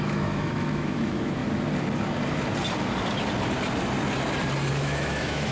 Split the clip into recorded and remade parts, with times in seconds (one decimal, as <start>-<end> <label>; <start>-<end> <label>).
0.0-1.4 remade; 1.4-4.7 recorded; 4.7-5.5 remade